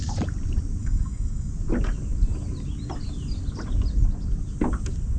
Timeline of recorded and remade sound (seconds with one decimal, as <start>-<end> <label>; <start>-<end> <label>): 0.0-0.8 recorded; 0.8-1.5 remade; 1.5-5.2 recorded